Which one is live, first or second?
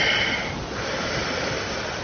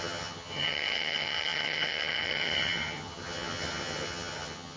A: first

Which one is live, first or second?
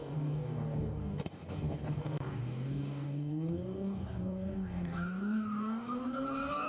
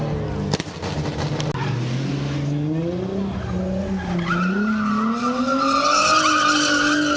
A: second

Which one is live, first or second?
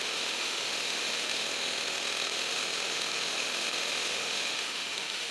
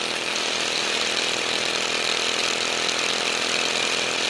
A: second